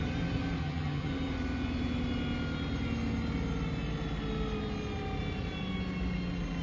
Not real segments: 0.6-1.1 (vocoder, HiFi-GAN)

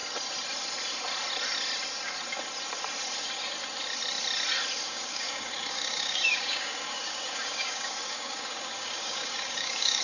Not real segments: 4.8-10.0 (codec, DAC)

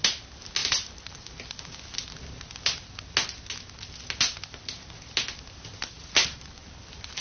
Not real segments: none

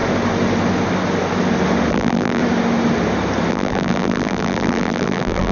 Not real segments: 1.9-2.4 (vocoder, BigVGAN v2); 3.5-5.5

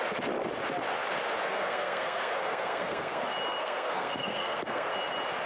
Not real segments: 1.4-3.2 (codec, SNAC); 3.6-4.9

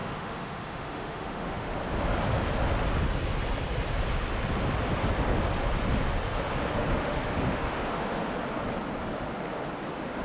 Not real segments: 0.0-1.8 (autoencoder, DAC-VAE); 6.8-8.2

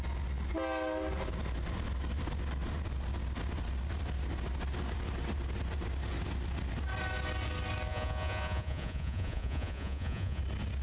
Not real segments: 7.9-10.4 (vocoder, Vocos)

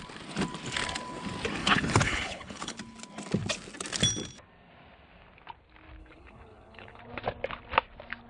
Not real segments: 1.6-2.8 (codec, HILCodec); 6.0-7.0